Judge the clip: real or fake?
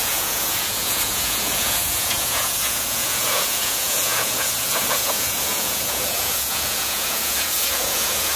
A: fake